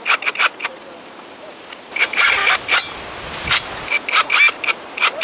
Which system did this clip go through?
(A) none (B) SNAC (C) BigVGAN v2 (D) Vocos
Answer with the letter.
A